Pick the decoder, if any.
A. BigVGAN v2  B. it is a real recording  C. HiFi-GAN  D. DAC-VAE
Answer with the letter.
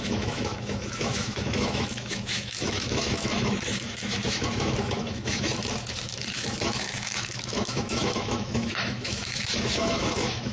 D